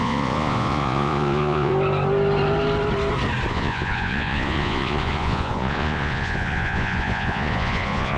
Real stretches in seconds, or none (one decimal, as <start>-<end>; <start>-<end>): 1.7-3.5